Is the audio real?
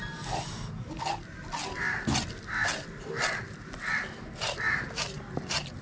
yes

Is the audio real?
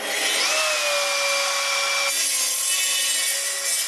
yes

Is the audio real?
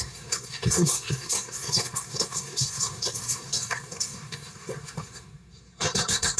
no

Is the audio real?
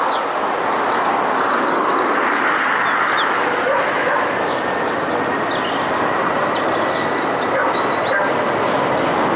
yes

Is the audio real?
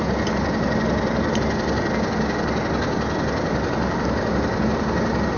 yes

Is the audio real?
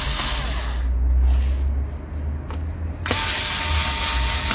yes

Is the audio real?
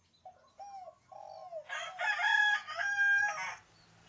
yes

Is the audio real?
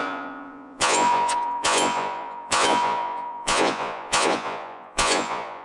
no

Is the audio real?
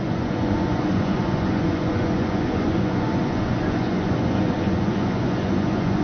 no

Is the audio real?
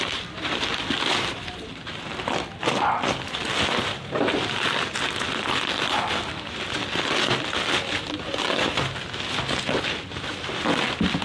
no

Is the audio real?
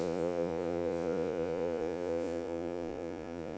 no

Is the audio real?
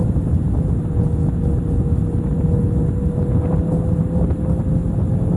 yes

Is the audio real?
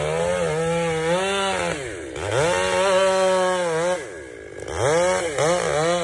yes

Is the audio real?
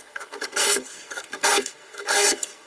no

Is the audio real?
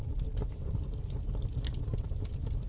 yes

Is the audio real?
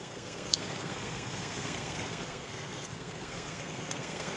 no